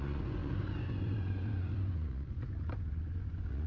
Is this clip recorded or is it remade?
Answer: remade